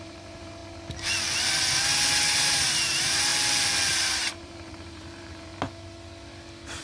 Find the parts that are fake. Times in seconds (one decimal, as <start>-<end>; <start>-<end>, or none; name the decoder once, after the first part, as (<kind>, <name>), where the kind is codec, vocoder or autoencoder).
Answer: 0.0-0.6 (vocoder, BigVGAN v2); 2.3-3.3; 3.9-5.5